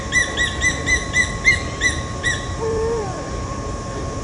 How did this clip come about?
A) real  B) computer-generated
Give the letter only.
B